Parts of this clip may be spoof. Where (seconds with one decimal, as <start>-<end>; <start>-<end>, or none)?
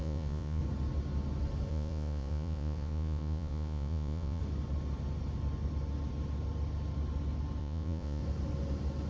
0.0-0.6; 1.7-4.4; 7.6-8.2